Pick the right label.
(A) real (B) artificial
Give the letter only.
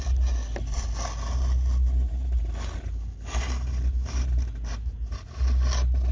A